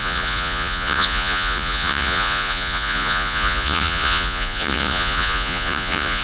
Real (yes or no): no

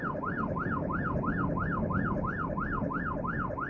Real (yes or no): yes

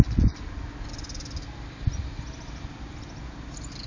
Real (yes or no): yes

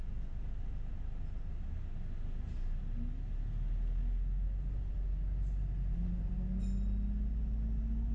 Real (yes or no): yes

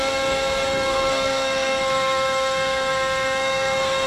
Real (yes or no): no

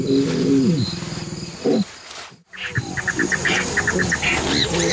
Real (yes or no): yes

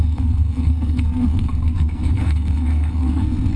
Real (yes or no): no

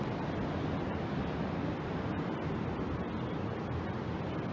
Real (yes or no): yes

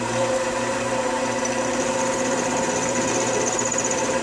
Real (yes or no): no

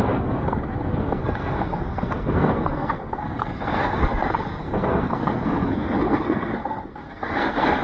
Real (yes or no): no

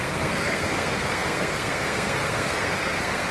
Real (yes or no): no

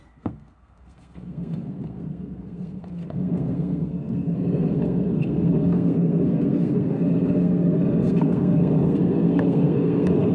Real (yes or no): no